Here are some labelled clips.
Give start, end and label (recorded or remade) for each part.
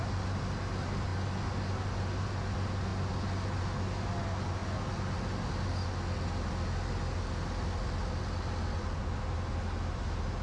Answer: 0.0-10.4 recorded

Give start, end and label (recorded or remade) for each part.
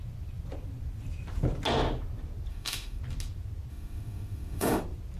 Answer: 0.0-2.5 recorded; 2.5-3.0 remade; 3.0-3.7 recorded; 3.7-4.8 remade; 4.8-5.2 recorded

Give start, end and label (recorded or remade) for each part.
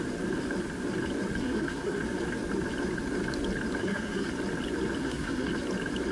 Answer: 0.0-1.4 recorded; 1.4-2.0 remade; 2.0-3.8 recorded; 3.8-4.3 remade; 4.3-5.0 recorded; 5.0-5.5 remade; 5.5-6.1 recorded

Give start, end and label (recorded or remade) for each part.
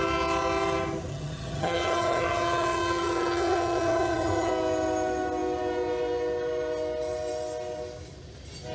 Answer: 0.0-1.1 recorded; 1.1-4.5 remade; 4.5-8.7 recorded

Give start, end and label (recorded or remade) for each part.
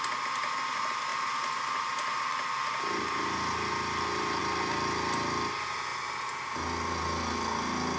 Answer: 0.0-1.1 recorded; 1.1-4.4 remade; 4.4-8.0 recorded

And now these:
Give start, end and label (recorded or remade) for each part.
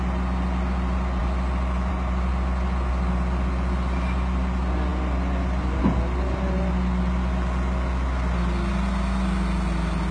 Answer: 0.0-10.1 recorded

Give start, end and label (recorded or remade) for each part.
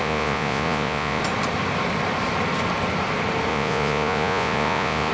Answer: 0.0-1.2 remade; 1.2-3.5 recorded; 3.5-5.1 remade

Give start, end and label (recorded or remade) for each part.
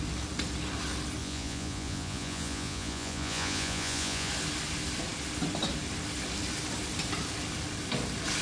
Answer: 0.0-1.2 recorded; 1.2-4.3 remade; 4.3-8.4 recorded